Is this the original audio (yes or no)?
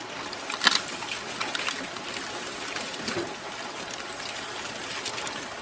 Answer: yes